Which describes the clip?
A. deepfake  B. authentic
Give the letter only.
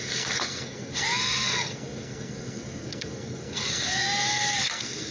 A